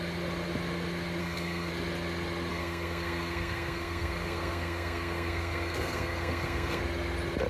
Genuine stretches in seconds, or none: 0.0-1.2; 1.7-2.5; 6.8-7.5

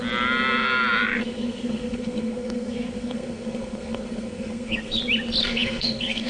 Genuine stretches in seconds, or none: 0.0-1.2; 5.0-5.4